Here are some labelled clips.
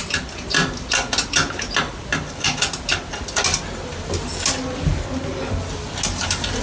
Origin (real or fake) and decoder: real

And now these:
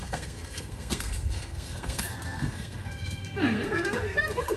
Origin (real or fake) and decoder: fake, codec, SNAC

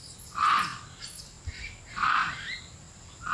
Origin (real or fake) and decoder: real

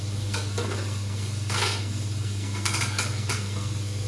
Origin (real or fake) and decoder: fake, codec, SNAC